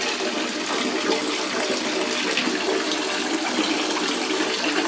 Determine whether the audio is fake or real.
real